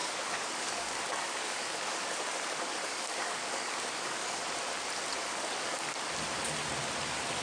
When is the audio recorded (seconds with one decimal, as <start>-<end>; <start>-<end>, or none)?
4.4-5.2; 6.1-7.4